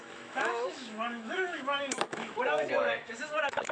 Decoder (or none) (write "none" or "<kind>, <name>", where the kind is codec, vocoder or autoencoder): autoencoder, DAC-VAE